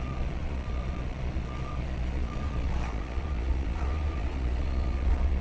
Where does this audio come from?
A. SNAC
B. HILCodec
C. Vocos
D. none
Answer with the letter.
C